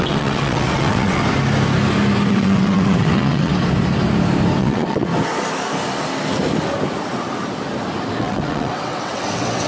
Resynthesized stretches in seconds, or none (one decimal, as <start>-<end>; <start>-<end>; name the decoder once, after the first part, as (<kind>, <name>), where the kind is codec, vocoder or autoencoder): 0.0-1.2 (vocoder, WaveNeXt); 2.3-3.5; 4.6-5.1; 8.2-9.7